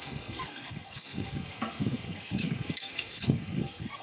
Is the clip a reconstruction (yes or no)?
yes